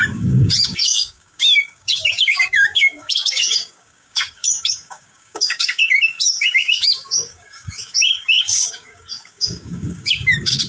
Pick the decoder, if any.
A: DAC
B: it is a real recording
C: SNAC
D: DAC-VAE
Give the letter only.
A